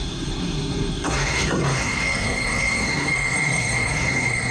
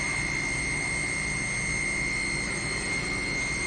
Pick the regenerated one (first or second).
first